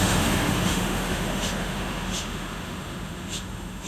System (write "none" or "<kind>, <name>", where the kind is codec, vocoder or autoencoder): autoencoder, DAC-VAE